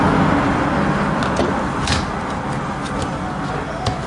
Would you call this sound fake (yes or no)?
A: no